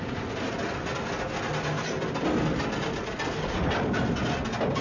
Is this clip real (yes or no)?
yes